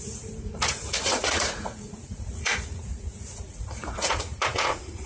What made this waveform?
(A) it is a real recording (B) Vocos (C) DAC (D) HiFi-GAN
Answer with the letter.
B